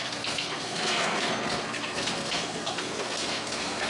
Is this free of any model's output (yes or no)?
no